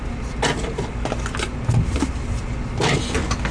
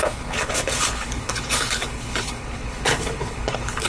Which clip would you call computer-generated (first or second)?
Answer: second